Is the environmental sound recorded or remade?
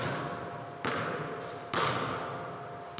recorded